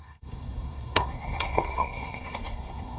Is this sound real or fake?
fake